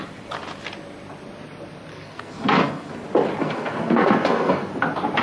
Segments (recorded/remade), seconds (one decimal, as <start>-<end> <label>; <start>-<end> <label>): 0.0-1.9 recorded; 1.9-2.9 remade; 2.9-3.4 recorded; 3.4-4.7 remade; 4.7-5.2 recorded